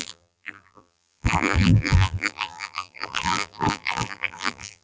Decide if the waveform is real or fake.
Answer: fake